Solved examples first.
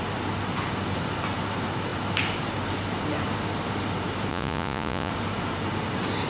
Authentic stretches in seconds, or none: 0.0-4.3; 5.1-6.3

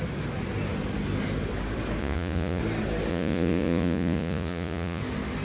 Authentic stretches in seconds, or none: 0.0-2.0; 2.6-3.1; 5.0-5.4